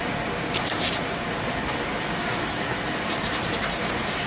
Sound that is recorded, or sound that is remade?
remade